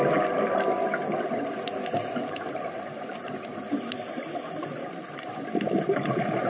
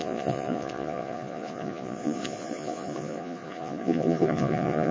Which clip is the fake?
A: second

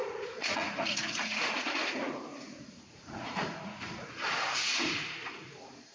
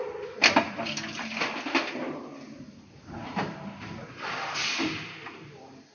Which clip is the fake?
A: first